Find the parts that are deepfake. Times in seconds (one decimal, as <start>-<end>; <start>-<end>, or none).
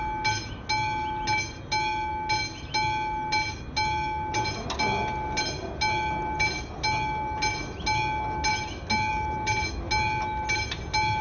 none